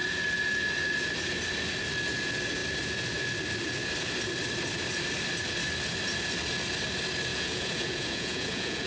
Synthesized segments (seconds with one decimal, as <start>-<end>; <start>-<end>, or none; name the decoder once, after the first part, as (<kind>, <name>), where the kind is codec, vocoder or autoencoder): 7.3-8.9 (vocoder, Vocos)